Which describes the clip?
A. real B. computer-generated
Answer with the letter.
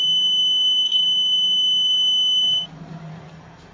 B